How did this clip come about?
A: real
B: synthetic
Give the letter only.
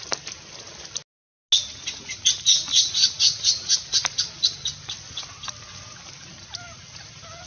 A